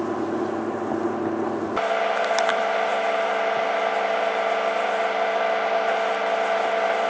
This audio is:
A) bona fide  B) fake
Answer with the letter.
A